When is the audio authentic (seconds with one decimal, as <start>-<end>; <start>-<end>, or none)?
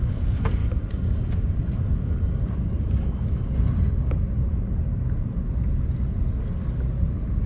0.0-0.6; 2.9-5.2; 5.9-7.5